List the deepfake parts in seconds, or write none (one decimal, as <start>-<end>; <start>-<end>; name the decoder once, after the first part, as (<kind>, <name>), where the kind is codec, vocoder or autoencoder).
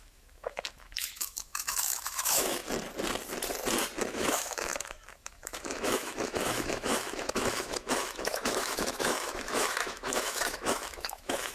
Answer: 0.0-2.6 (autoencoder, DAC-VAE); 4.1-11.5